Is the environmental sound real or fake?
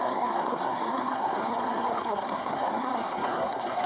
fake